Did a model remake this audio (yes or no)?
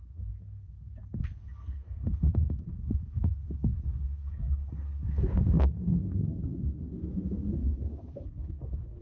yes